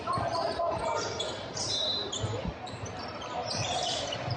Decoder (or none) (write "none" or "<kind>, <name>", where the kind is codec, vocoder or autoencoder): vocoder, BigVGAN v2